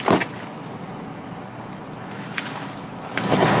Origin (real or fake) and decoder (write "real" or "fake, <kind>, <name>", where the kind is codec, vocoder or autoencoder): real